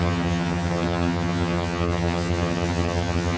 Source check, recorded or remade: remade